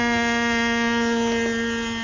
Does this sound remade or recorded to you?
recorded